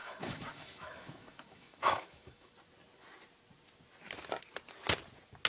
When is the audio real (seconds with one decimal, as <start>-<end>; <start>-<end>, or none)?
2.5-5.5